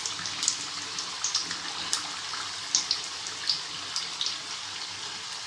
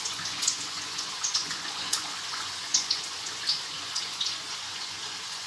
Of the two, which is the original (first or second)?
first